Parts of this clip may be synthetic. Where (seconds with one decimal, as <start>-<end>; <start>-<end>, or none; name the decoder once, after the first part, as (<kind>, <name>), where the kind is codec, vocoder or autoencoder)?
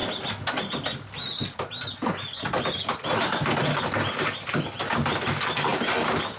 none